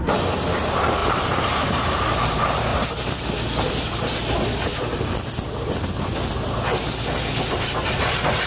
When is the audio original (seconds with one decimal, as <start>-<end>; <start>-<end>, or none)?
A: 2.7-7.6